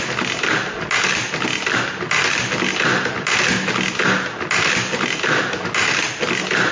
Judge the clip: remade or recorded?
recorded